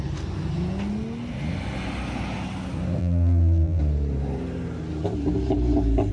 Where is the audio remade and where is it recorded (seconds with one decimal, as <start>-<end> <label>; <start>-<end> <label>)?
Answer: 0.0-3.0 recorded; 3.0-3.8 remade; 3.8-6.1 recorded